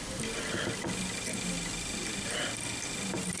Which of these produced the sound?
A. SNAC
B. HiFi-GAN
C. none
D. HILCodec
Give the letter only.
C